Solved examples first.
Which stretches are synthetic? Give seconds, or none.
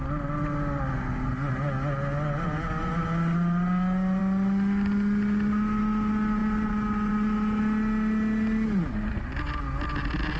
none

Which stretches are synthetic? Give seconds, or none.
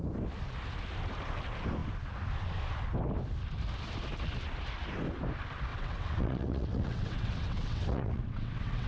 5.7-8.9 (vocoder, WaveNeXt)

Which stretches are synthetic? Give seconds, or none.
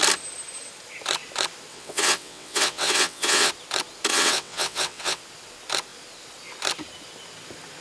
1.7-3.5 (vocoder, WaveNeXt); 4.1-5.2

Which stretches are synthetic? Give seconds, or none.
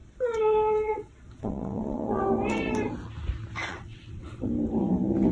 0.0-2.2 (vocoder, WaveNeXt); 3.7-4.5